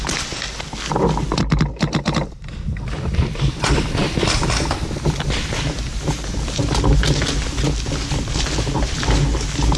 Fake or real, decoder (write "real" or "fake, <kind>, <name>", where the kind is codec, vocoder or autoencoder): real